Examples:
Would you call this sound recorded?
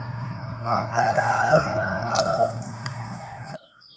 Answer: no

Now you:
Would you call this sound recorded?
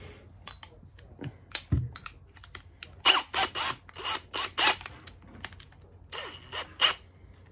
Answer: yes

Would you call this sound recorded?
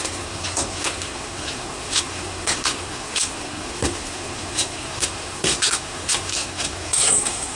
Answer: no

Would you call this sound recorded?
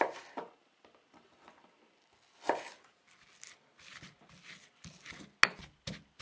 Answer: yes